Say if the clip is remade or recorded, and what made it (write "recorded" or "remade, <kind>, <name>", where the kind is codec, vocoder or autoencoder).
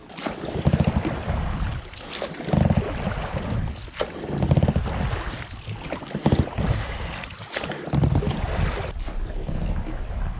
recorded